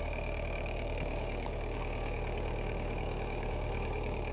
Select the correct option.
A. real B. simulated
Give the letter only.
B